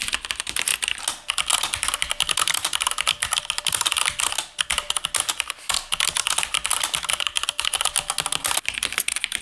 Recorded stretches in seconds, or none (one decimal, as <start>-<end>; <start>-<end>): 0.0-9.4